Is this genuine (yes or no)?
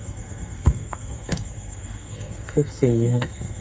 no